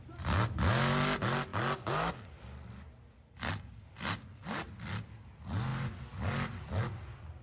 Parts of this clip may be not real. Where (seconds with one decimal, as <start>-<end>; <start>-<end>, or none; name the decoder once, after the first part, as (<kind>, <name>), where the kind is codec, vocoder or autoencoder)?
none